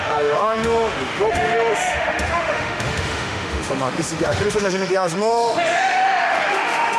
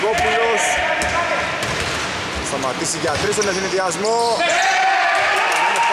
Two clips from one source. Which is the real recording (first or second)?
second